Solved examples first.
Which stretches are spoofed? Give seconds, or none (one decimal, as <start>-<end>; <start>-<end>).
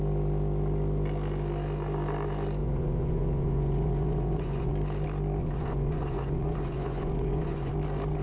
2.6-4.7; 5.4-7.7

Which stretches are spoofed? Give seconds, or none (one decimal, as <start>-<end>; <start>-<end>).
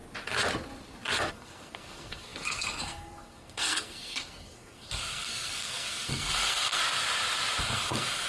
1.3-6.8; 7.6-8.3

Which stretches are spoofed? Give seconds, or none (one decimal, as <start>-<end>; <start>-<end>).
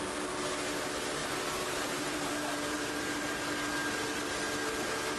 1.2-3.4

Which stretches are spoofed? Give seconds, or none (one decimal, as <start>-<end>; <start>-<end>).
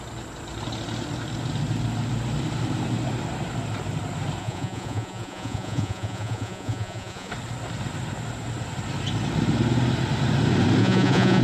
4.4-7.3; 10.8-11.4